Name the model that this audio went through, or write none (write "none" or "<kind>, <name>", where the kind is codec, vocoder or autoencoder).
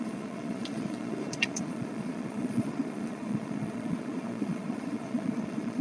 vocoder, Vocos